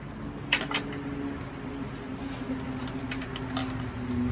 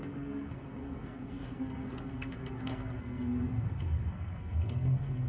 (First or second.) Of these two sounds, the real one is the first